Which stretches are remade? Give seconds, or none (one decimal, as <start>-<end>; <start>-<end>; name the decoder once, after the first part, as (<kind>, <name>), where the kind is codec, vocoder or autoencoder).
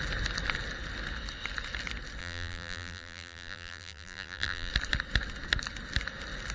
2.2-4.7 (vocoder, BigVGAN v2)